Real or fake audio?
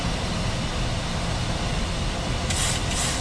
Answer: real